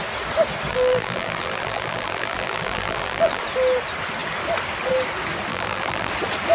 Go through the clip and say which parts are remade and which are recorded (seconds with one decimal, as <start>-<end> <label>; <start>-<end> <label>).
0.0-0.7 recorded; 0.7-3.4 remade; 3.4-5.5 recorded; 5.5-6.1 remade; 6.1-6.5 recorded